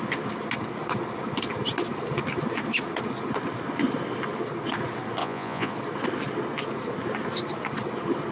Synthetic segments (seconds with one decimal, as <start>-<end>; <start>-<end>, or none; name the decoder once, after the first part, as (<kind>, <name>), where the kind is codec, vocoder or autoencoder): 5.2-5.7 (vocoder, Vocos)